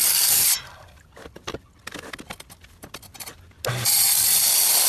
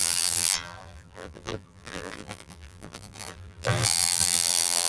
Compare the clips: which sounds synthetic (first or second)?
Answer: second